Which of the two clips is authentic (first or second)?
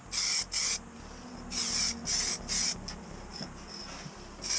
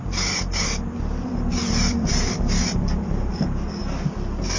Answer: first